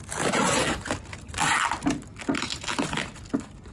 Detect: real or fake real